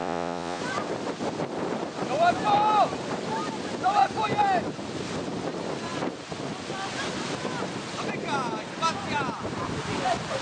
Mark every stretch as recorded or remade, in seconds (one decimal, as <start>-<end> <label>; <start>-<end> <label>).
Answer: 0.0-0.6 remade; 0.6-10.4 recorded